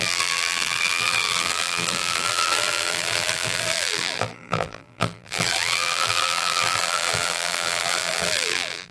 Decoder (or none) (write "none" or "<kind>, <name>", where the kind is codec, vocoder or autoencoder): vocoder, BigVGAN v2